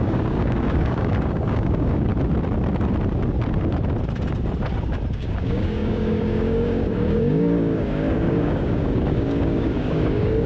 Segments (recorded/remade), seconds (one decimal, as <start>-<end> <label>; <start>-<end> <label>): 0.0-2.1 remade; 2.1-5.1 recorded; 5.1-10.5 remade